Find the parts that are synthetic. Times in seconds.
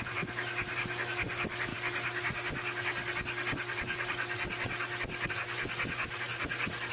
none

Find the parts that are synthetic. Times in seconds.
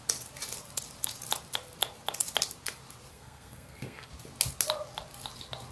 3.1-4.1 (codec, SNAC)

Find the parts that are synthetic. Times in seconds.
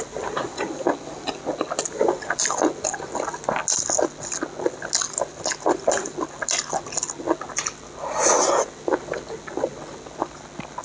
none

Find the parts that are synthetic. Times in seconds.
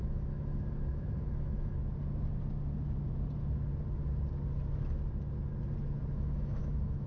0.0-1.8 (autoencoder, DAC-VAE); 6.1-7.1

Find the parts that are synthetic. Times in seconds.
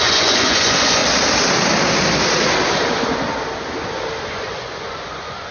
0.0-1.0 (vocoder, Vocos); 4.3-5.5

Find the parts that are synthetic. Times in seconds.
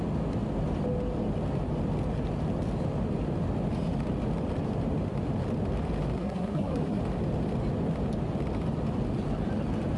6.2-7.0 (codec, SNAC)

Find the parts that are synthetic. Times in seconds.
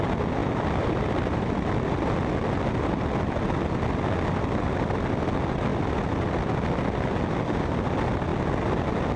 none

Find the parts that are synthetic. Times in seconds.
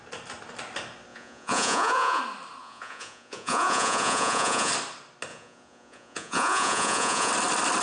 1.1-2.2 (vocoder, Vocos); 2.6-4.7; 5.3-7.3